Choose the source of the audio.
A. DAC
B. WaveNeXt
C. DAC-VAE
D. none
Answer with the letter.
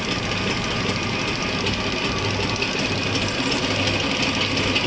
D